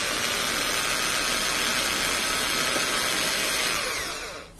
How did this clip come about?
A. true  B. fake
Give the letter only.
A